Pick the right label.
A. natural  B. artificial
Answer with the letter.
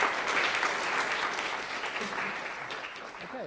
A